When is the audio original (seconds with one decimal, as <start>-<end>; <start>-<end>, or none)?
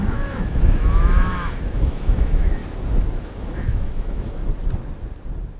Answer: 2.6-3.2; 4.4-5.6